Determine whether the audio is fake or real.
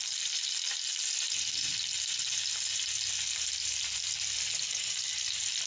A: real